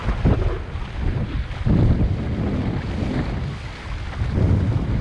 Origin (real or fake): real